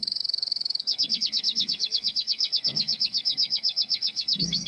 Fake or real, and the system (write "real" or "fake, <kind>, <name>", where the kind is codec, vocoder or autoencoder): fake, codec, SNAC